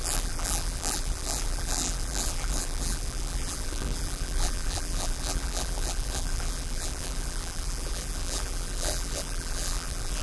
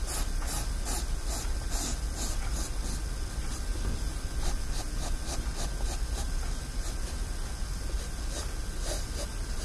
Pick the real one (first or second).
second